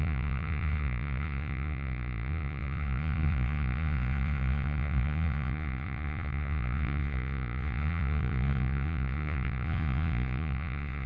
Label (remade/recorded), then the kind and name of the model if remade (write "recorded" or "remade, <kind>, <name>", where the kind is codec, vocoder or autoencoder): remade, vocoder, Vocos